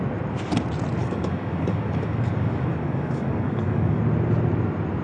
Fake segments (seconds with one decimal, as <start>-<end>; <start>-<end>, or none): 1.0-4.0